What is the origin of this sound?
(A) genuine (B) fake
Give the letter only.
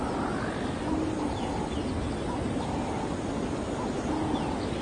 A